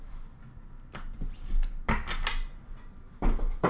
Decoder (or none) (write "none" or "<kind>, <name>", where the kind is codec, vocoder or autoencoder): none